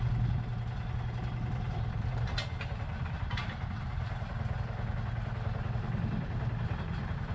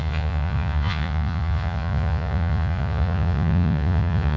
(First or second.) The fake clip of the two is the second